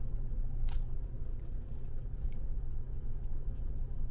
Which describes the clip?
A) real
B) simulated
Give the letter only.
B